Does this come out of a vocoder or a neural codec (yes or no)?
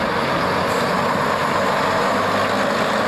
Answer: no